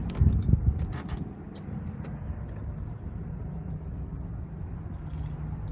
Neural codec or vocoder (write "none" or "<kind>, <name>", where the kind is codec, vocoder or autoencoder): none